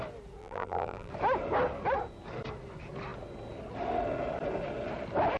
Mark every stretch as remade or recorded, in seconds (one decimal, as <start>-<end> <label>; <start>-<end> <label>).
0.0-0.4 recorded; 0.4-1.1 remade; 1.1-5.4 recorded